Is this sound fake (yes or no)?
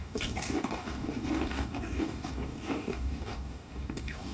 yes